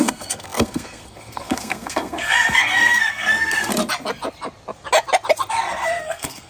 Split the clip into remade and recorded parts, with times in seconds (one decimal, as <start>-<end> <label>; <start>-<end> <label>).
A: 0.0-3.7 remade; 3.7-5.5 recorded; 5.5-6.5 remade